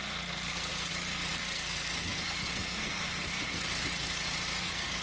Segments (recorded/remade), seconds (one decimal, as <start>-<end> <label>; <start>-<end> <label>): 0.0-3.7 remade; 3.7-4.6 recorded; 4.6-5.0 remade

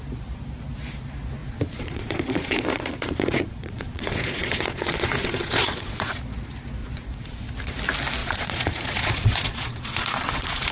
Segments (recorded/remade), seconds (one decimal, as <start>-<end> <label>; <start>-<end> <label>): 0.0-1.4 recorded; 1.4-6.2 remade; 6.2-6.8 recorded; 6.8-7.4 remade; 7.4-8.2 recorded; 8.2-10.7 remade

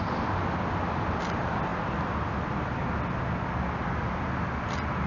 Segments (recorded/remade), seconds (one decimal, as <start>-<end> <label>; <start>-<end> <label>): 0.0-5.1 recorded

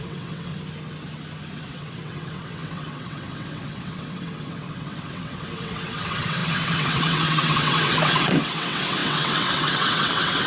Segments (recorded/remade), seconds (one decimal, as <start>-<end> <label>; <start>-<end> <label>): 0.0-0.5 remade; 0.5-1.5 recorded; 1.5-10.5 remade